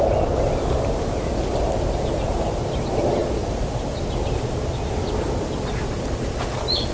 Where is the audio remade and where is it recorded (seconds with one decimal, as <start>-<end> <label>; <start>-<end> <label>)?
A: 0.0-6.9 recorded